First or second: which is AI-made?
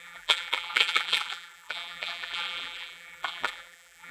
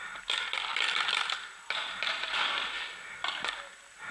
first